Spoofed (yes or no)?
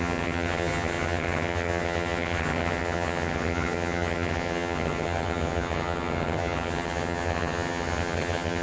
yes